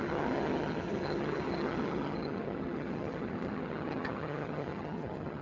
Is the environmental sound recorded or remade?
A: remade